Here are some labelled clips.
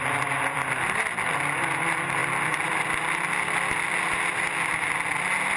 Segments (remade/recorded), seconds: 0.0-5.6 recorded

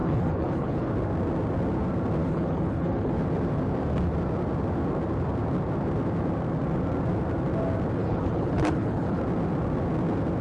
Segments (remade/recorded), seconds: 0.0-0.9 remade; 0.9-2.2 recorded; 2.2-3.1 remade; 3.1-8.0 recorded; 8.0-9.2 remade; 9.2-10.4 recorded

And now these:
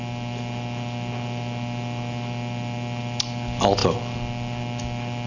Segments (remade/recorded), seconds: 0.0-5.3 recorded